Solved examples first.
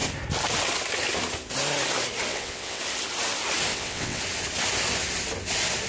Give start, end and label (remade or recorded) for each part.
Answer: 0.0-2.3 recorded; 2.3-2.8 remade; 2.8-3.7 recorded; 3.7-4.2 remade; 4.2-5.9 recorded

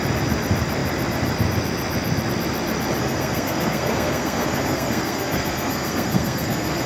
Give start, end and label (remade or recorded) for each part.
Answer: 0.0-3.0 recorded; 3.0-6.9 remade